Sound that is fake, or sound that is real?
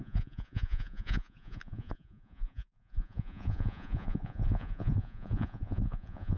fake